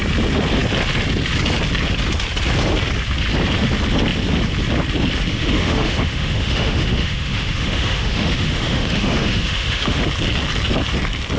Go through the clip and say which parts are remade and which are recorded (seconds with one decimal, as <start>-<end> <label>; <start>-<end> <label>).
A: 0.0-5.3 recorded; 5.3-10.0 remade; 10.0-11.4 recorded